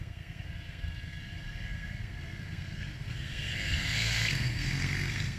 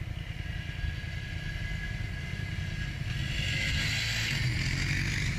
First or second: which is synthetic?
first